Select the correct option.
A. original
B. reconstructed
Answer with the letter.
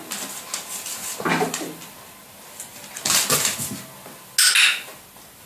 A